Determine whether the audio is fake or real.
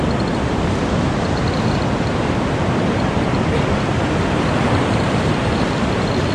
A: fake